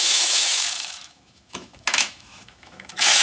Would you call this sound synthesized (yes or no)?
yes